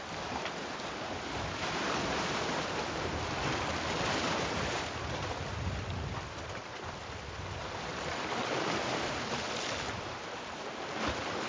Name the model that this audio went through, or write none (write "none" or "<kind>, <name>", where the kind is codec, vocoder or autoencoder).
none